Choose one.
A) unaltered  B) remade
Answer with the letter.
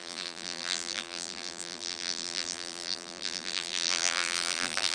B